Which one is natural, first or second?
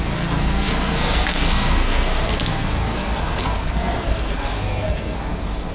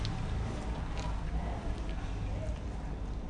second